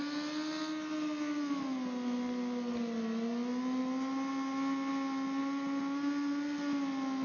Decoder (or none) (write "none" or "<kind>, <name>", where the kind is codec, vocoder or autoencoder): none